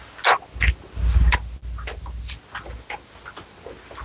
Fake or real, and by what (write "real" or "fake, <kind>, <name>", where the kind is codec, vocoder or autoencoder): real